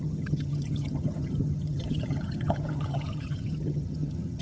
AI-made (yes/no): yes